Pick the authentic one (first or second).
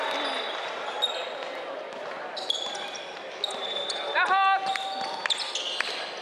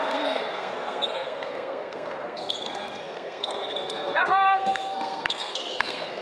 first